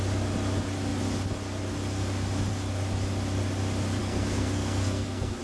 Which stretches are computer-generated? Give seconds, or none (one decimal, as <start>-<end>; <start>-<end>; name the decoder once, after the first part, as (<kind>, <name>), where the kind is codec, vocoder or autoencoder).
4.0-5.4 (codec, SNAC)